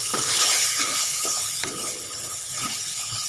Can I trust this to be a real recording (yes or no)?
no